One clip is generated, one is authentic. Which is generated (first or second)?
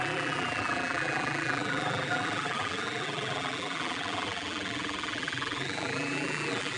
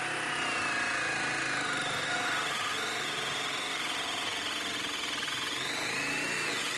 first